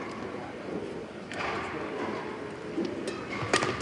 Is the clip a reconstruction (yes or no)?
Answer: no